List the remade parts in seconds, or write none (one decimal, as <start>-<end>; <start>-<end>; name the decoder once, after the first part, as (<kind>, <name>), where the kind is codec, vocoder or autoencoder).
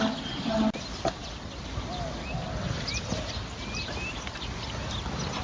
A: none